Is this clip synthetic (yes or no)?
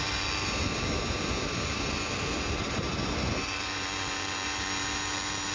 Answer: yes